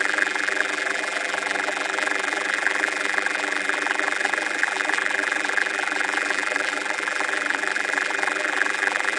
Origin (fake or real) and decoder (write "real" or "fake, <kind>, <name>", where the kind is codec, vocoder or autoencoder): fake, vocoder, BigVGAN v2